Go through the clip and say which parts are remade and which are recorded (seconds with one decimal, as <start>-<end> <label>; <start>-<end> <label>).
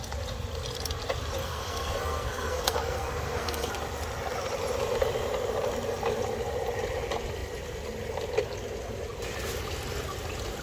0.0-1.4 recorded; 1.4-3.7 remade; 3.7-10.6 recorded